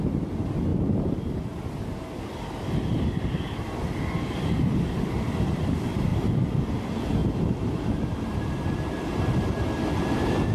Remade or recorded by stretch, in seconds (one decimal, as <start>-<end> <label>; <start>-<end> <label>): 0.0-10.5 recorded